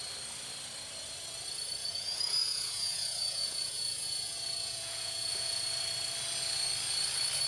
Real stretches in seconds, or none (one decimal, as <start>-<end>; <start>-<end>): 0.0-1.8; 5.6-7.5